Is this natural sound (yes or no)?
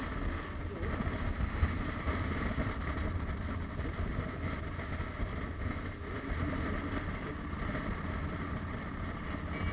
yes